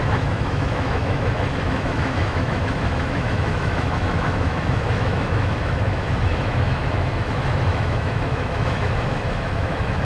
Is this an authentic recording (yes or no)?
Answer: no